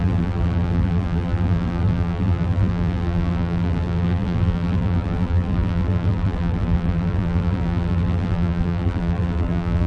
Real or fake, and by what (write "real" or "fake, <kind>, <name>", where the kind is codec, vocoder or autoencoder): fake, vocoder, BigVGAN v2